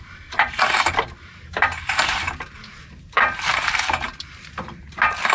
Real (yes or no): no